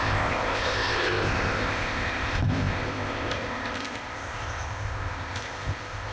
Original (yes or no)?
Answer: no